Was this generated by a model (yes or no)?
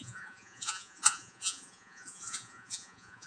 yes